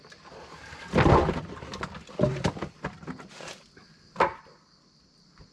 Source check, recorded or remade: remade